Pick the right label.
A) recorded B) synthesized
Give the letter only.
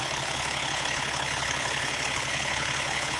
B